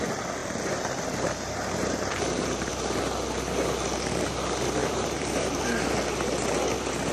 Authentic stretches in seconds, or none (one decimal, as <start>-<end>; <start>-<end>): 0.0-0.4; 2.7-4.8; 5.6-7.1